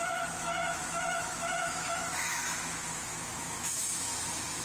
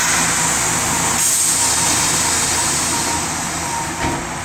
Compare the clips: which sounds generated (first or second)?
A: first